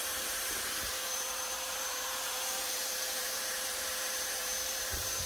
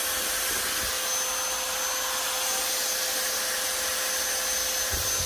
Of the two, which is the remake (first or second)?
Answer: first